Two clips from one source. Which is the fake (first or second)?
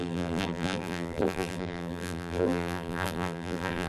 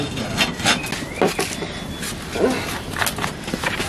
first